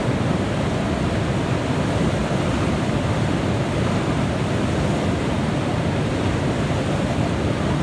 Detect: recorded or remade recorded